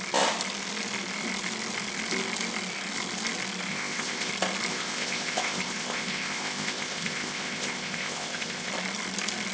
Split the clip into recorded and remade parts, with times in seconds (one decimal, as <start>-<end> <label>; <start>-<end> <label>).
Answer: 0.0-3.7 recorded; 3.7-4.3 remade; 4.3-4.7 recorded; 4.7-8.7 remade; 8.7-9.5 recorded